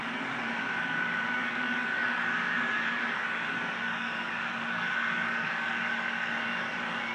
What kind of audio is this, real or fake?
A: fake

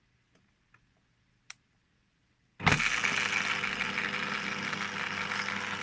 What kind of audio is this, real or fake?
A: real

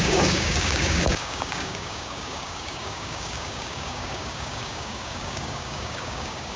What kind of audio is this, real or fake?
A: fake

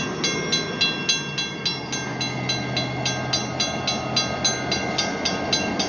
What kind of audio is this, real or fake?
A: real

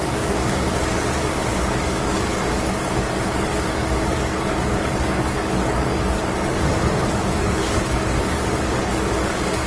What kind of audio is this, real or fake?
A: fake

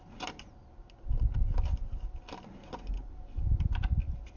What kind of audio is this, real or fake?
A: real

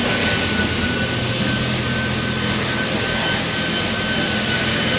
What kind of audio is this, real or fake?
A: real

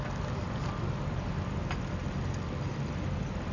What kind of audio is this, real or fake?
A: real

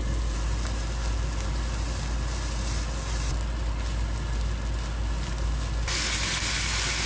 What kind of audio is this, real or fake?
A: real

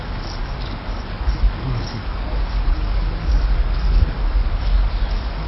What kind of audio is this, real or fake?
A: fake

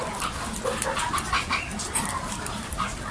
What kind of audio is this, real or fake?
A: real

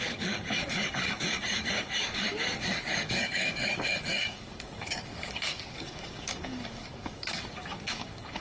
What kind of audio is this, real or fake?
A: fake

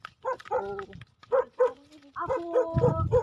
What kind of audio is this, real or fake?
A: real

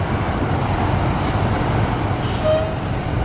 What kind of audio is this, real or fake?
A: real